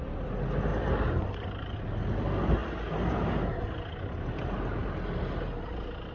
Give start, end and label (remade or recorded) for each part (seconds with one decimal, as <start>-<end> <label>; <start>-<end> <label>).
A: 0.0-6.1 recorded